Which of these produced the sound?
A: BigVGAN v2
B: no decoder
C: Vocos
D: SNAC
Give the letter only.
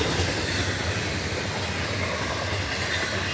B